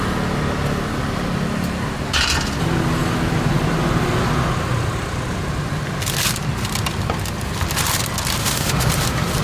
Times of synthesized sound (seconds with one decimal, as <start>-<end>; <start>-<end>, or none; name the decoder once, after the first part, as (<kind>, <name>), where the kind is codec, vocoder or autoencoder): 8.4-8.9 (autoencoder, DAC-VAE)